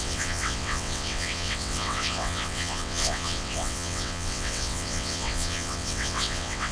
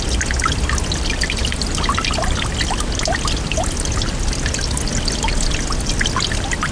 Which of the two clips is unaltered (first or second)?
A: second